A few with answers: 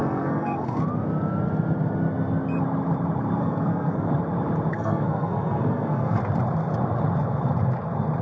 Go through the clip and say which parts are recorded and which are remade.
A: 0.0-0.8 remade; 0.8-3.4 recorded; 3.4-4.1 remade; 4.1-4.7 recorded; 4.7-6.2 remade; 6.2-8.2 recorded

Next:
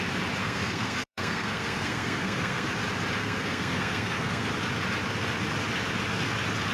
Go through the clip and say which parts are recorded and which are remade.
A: 0.0-0.4 recorded; 0.4-2.7 remade; 2.7-3.2 recorded; 3.2-4.5 remade; 4.5-6.7 recorded

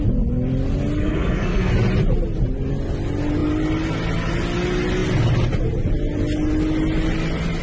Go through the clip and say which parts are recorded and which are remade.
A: 0.0-1.0 recorded; 1.0-1.7 remade; 1.7-7.6 recorded

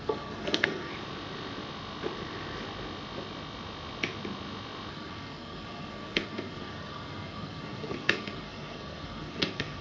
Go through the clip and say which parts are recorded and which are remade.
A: 0.0-0.9 remade; 0.9-4.9 recorded; 4.9-9.8 remade

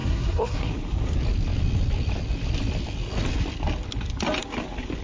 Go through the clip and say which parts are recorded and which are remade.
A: 0.0-0.7 remade; 0.7-5.0 recorded

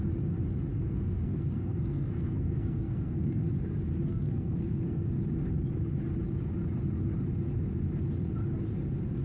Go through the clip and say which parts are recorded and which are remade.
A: 0.0-0.7 recorded; 0.7-3.5 remade; 3.5-4.1 recorded; 4.1-5.1 remade; 5.1-9.2 recorded